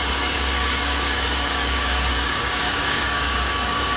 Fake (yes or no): yes